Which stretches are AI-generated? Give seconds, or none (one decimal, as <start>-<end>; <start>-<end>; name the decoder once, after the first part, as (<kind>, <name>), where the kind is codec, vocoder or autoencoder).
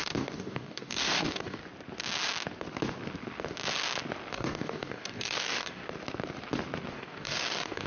0.0-1.6 (codec, DAC); 4.3-5.8; 6.9-7.9